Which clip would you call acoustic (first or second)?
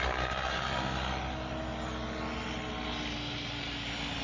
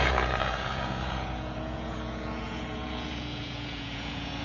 first